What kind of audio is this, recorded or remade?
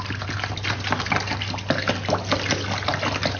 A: recorded